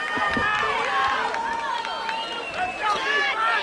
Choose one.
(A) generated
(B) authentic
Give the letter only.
B